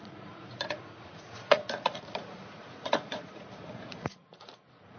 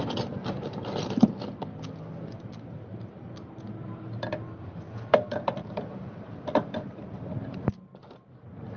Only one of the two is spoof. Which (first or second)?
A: first